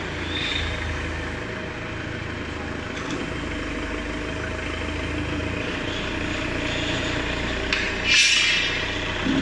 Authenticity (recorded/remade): recorded